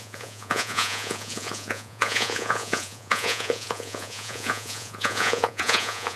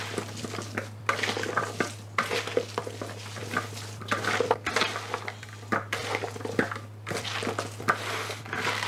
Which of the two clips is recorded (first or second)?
second